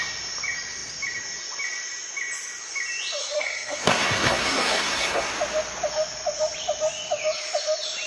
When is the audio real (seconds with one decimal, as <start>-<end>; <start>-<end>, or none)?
0.0-3.2; 5.3-8.1